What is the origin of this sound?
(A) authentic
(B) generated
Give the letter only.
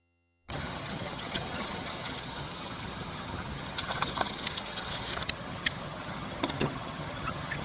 B